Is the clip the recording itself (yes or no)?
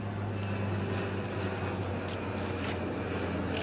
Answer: yes